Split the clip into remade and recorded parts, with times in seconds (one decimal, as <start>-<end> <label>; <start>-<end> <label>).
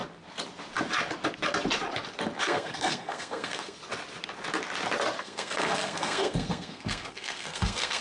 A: 0.0-2.4 recorded; 2.4-3.8 remade; 3.8-5.2 recorded; 5.2-8.0 remade